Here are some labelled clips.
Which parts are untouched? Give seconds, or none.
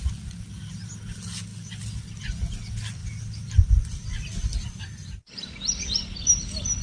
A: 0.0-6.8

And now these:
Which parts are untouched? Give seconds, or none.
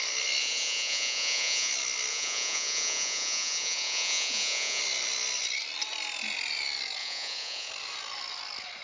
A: 0.0-0.4; 1.7-2.1; 4.8-7.0; 7.7-8.8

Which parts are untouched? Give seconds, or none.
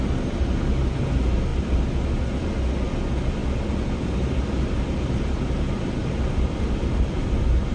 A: 0.0-7.7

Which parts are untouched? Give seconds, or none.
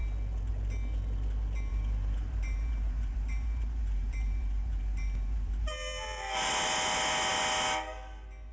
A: 0.0-1.7; 6.5-8.5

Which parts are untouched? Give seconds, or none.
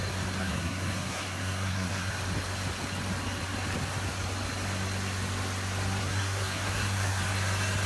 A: 0.0-0.4; 2.1-6.0; 7.2-7.9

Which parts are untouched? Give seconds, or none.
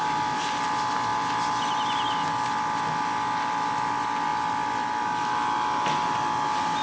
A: 0.0-6.8